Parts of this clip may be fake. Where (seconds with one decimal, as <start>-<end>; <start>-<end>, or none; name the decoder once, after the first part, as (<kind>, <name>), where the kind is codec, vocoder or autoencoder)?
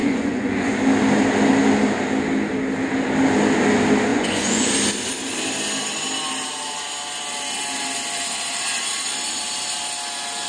0.0-0.7 (vocoder, Vocos); 4.1-4.7